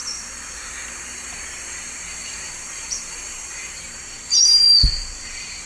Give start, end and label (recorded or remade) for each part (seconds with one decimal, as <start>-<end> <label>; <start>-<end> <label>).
0.0-0.7 remade; 0.7-2.2 recorded; 2.2-5.7 remade